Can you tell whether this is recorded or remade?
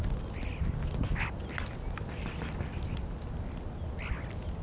recorded